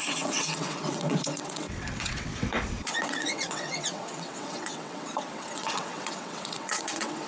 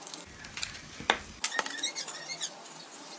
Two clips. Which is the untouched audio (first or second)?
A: second